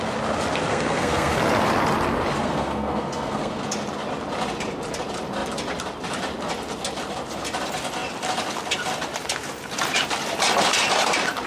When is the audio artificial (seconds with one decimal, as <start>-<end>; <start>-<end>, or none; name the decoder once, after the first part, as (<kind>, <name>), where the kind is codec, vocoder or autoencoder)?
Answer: 0.7-1.4 (codec, SNAC); 2.4-3.6